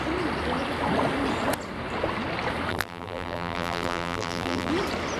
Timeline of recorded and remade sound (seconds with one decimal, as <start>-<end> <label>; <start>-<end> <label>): 0.0-2.7 recorded; 2.7-4.7 remade; 4.7-5.2 recorded